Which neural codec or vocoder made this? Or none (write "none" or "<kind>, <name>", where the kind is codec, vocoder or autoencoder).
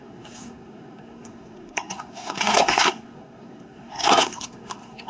codec, SNAC